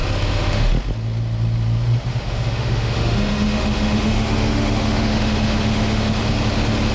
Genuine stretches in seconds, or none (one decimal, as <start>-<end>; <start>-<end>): 0.7-2.1; 6.2-6.9